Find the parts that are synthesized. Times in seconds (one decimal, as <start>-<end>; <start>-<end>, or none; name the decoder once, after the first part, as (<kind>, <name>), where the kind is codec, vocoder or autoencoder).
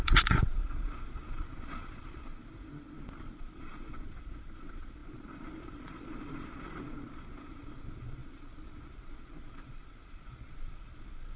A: 0.0-2.3 (vocoder, Vocos); 3.3-11.4